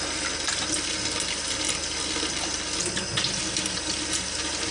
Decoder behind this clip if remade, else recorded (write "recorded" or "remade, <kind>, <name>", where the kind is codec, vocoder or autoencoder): recorded